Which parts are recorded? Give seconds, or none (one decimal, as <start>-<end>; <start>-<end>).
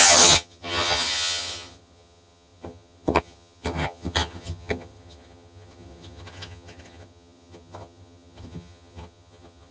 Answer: none